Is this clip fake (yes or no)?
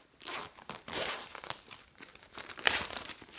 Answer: yes